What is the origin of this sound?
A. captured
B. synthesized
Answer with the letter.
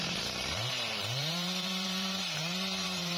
B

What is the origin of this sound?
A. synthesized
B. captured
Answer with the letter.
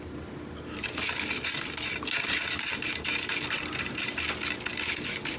B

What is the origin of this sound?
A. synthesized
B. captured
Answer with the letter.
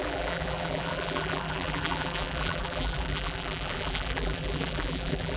A